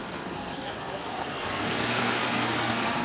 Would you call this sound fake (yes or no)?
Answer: yes